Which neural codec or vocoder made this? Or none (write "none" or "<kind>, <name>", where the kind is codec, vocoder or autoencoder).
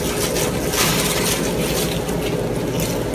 none